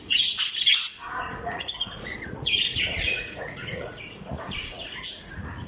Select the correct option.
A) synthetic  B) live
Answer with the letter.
A